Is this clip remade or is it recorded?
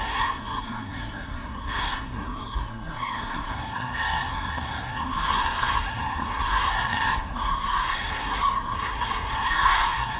remade